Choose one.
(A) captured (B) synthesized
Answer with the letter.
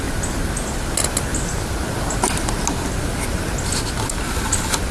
A